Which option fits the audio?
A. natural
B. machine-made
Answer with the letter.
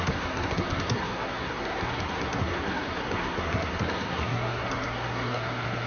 B